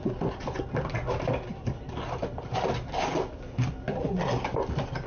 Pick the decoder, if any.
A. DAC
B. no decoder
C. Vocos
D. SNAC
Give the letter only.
B